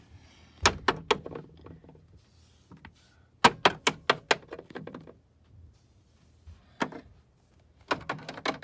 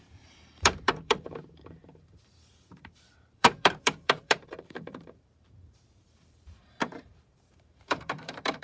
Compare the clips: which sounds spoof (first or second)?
second